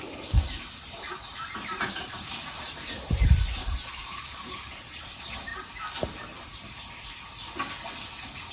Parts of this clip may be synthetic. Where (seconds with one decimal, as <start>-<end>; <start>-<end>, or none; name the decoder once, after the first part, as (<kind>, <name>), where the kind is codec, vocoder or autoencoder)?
0.0-5.5 (vocoder, BigVGAN v2)